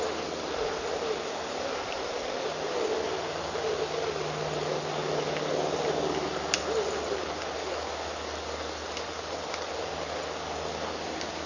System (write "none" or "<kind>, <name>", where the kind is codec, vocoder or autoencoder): none